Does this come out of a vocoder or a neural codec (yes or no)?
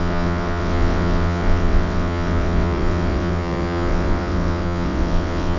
yes